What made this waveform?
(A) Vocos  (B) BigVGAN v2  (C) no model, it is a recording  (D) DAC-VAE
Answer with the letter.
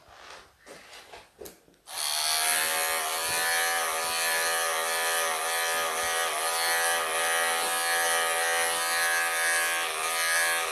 C